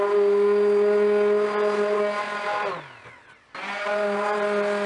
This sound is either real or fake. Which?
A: real